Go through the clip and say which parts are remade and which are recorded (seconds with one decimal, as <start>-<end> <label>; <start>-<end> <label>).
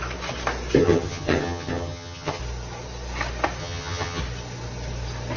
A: 0.0-0.8 recorded; 0.8-2.4 remade; 2.4-3.6 recorded; 3.6-4.2 remade; 4.2-5.4 recorded